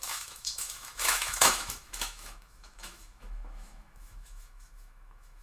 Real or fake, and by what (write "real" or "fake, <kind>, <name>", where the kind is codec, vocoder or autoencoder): fake, autoencoder, DAC-VAE